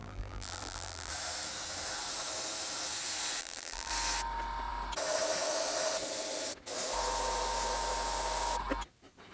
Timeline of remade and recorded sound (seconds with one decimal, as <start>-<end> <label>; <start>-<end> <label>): 0.0-1.1 remade; 1.1-3.4 recorded; 3.4-3.9 remade; 3.9-9.3 recorded